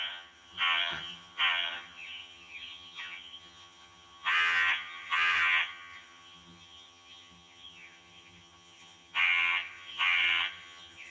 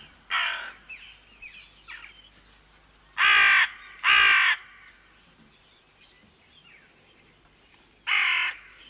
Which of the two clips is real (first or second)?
second